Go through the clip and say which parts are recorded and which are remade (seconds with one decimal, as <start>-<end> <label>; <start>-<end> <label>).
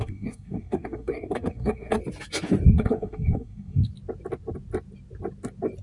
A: 0.0-2.0 remade; 2.0-2.7 recorded; 2.7-3.9 remade; 3.9-5.8 recorded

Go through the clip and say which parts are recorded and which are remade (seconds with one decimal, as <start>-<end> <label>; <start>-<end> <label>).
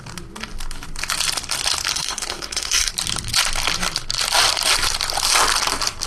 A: 0.0-1.9 recorded; 1.9-2.9 remade; 2.9-6.1 recorded